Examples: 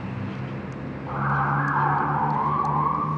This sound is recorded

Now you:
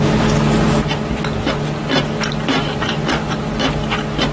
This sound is recorded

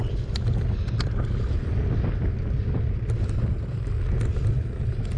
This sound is recorded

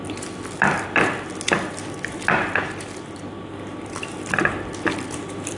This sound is recorded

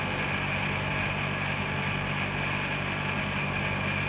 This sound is recorded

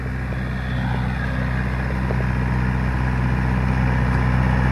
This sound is recorded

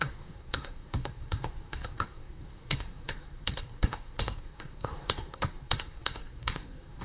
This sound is remade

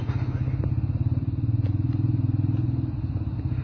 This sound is recorded